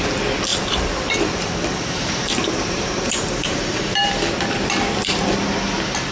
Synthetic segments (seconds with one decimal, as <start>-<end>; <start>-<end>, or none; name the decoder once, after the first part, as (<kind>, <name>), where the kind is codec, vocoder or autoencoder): 0.5-4.1 (vocoder, BigVGAN v2)

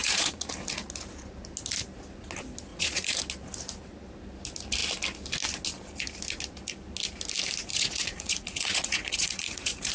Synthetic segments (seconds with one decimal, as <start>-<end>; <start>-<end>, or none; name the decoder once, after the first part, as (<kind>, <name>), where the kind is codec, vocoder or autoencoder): 0.0-0.5 (vocoder, Vocos); 2.7-3.2; 7.7-9.9